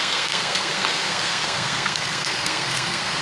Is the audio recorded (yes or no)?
no